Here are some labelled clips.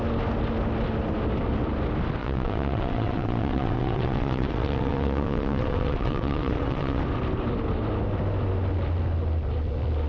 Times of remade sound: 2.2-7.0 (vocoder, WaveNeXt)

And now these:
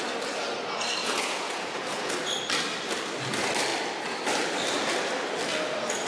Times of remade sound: 1.0-2.1 (vocoder, Vocos)